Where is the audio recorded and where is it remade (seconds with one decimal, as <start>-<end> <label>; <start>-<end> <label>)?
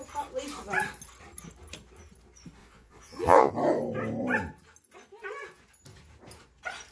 0.0-2.6 recorded; 2.6-3.5 remade; 3.5-6.9 recorded